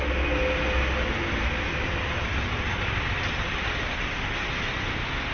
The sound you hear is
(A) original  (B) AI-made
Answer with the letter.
A